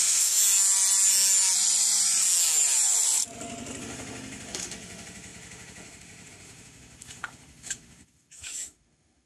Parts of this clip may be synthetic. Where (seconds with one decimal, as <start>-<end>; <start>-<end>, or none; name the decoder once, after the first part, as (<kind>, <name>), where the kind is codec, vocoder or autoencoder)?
0.0-0.4 (autoencoder, DAC-VAE); 3.8-9.3